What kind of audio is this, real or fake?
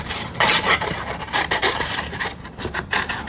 fake